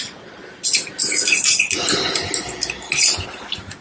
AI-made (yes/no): no